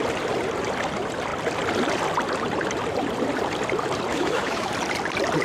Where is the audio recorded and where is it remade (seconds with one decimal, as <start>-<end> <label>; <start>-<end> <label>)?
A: 0.0-4.1 recorded; 4.1-4.7 remade; 4.7-5.4 recorded

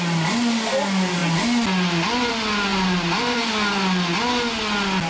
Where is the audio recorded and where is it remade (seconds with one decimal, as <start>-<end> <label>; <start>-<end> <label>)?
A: 0.0-2.7 recorded; 2.7-3.5 remade; 3.5-5.1 recorded

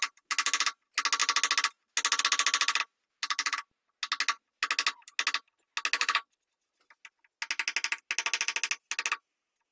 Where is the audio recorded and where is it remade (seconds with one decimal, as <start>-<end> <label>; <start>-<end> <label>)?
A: 0.0-9.7 recorded

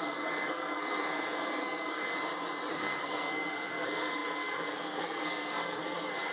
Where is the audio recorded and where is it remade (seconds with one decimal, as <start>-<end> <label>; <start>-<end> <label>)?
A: 0.0-2.1 remade; 2.1-2.7 recorded; 2.7-6.3 remade